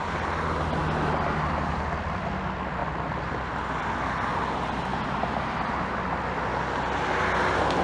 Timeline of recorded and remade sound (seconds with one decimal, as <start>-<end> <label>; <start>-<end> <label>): 0.0-7.8 recorded